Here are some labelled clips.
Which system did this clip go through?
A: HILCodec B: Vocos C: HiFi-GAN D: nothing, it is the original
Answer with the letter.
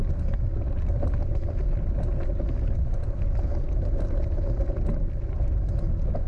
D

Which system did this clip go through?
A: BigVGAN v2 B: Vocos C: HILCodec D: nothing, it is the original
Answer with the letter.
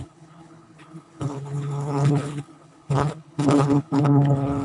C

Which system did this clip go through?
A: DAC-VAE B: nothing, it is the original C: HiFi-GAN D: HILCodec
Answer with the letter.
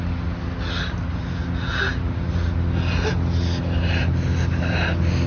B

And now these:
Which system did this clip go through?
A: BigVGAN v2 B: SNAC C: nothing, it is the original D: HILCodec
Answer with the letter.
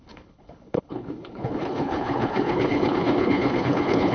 D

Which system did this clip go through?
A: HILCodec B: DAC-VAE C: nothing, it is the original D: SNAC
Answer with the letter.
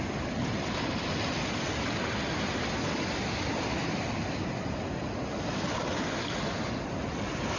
C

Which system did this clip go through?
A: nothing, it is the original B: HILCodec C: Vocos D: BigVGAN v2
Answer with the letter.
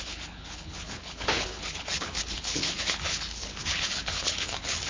B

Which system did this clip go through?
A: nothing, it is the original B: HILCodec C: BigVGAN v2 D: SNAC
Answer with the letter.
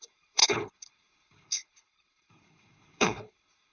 B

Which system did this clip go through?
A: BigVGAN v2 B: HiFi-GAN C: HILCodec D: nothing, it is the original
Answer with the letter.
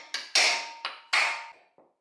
D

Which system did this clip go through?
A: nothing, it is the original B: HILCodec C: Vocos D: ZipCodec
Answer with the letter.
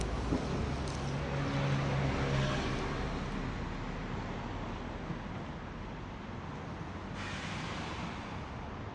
A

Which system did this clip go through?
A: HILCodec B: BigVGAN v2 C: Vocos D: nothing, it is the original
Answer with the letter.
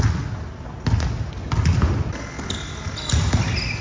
D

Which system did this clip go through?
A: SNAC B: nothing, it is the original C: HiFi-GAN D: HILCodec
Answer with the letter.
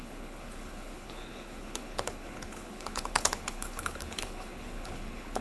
D